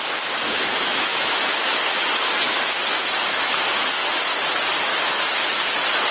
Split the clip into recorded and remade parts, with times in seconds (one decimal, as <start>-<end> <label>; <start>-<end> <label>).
0.0-0.7 recorded; 0.7-4.4 remade; 4.4-4.9 recorded; 4.9-5.5 remade; 5.5-6.1 recorded